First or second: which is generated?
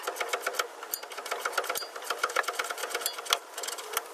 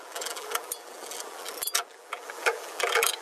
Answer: second